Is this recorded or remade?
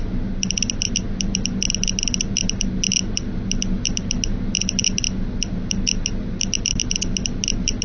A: recorded